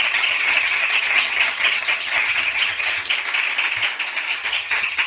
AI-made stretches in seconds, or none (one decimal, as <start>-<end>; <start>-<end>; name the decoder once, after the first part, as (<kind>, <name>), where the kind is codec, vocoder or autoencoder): 0.0-3.1 (vocoder, HiFi-GAN); 4.3-5.1